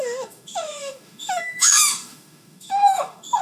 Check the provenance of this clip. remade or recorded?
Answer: remade